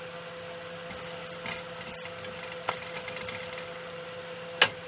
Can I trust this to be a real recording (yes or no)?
yes